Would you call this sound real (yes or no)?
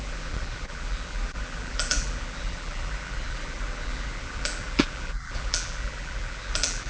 no